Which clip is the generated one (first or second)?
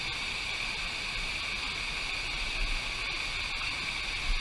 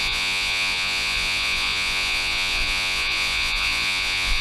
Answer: second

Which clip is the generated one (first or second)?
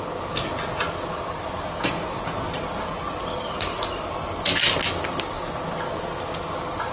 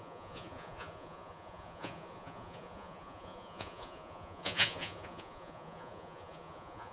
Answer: second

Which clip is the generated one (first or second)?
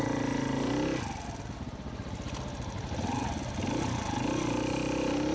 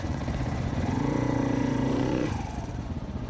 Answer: second